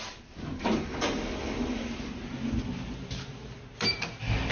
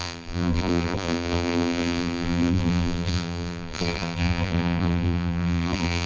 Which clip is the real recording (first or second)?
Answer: first